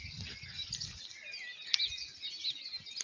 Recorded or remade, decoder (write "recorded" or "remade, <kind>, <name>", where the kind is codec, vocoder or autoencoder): recorded